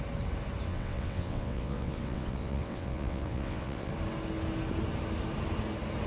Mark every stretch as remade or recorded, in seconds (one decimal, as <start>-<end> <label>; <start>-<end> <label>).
0.0-0.7 recorded; 0.7-3.9 remade; 3.9-6.1 recorded